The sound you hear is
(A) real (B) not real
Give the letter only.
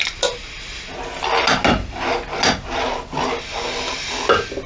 A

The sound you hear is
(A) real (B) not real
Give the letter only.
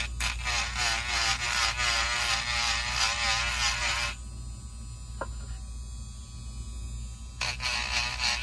A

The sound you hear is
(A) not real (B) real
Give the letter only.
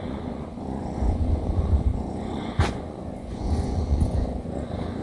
A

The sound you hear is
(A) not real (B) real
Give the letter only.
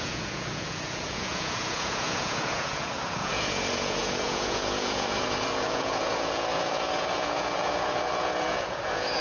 A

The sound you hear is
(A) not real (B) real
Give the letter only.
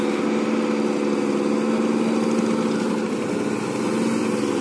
B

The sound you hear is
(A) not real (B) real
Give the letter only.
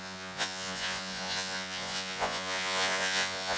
A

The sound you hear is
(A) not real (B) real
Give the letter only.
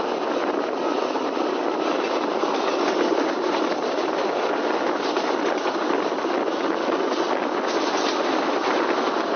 B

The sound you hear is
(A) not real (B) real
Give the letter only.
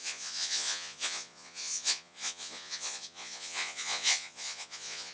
A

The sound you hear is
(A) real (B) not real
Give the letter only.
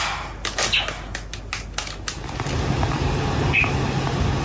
A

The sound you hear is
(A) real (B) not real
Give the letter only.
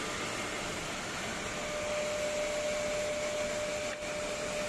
A